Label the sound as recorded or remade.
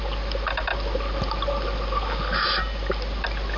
recorded